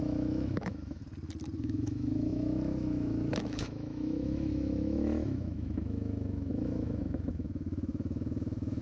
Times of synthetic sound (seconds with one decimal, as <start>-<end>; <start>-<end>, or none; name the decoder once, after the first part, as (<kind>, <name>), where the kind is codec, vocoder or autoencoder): 0.0-1.0 (autoencoder, DAC-VAE); 1.6-8.8